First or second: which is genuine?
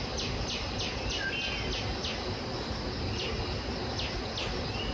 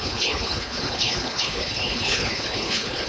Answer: first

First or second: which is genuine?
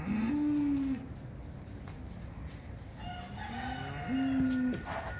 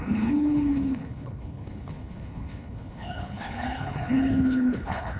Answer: first